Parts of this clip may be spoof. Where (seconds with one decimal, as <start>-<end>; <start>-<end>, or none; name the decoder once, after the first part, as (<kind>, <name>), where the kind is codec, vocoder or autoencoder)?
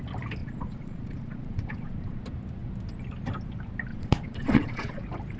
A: 0.4-2.2 (vocoder, Vocos); 3.9-5.0